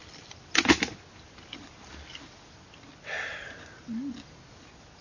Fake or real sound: real